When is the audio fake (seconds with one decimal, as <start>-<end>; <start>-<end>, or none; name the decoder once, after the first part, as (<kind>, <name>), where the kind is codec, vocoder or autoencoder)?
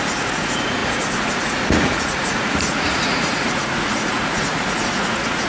0.0-5.5 (vocoder, Vocos)